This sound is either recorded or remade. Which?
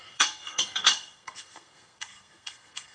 remade